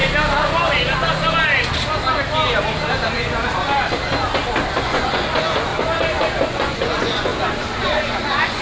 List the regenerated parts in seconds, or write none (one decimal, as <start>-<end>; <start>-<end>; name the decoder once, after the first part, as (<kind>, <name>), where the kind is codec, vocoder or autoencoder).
4.8-5.7 (vocoder, Vocos); 6.5-7.3; 7.8-8.6